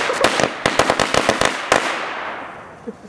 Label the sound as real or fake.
real